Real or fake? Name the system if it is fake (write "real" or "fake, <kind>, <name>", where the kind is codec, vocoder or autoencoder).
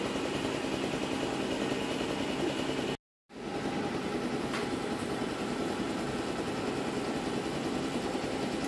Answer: real